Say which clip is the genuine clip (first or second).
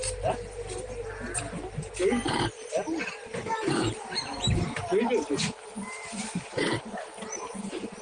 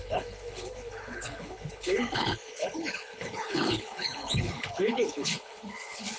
first